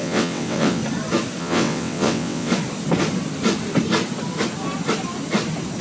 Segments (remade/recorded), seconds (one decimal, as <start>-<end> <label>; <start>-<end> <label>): 0.0-0.8 remade; 0.8-1.4 recorded; 1.4-2.5 remade; 2.5-5.8 recorded